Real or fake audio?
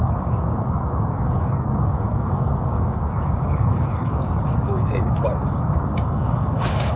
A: fake